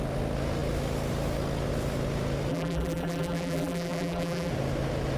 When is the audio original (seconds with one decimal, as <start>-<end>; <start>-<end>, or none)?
0.0-2.5; 4.5-5.2

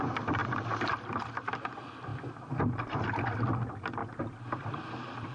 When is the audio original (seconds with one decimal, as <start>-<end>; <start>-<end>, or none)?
0.0-5.3

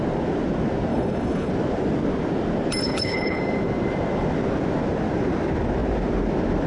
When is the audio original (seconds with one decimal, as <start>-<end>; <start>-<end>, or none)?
0.0-0.9; 1.5-2.8; 3.4-6.7

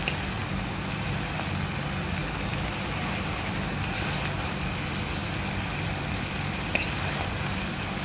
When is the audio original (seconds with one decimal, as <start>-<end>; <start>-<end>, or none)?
0.0-0.4; 1.4-8.0

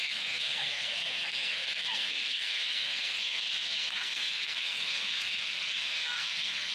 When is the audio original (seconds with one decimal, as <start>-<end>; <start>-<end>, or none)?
none

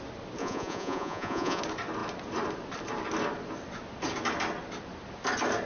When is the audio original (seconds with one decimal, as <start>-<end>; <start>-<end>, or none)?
0.0-0.4; 1.6-5.7